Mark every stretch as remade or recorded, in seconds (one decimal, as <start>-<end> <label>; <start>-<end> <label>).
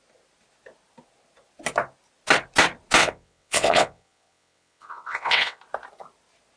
0.0-3.0 recorded; 3.0-5.6 remade; 5.6-6.6 recorded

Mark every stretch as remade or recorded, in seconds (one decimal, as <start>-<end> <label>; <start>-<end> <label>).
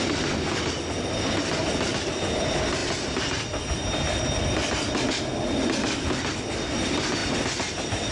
0.0-8.1 recorded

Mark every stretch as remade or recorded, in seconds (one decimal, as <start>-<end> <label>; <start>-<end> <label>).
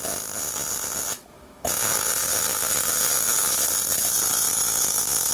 0.0-1.1 recorded; 1.1-1.7 remade; 1.7-2.2 recorded; 2.2-3.6 remade; 3.6-4.5 recorded; 4.5-5.3 remade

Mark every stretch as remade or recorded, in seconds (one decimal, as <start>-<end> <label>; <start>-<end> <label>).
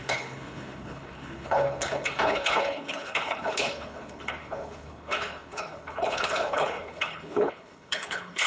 0.0-8.5 remade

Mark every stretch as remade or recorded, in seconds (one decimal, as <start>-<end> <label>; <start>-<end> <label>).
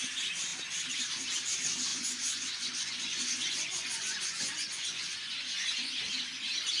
0.0-1.9 recorded; 1.9-6.0 remade; 6.0-6.8 recorded